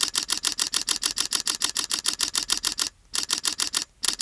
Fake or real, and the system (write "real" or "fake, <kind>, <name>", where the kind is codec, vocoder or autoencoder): real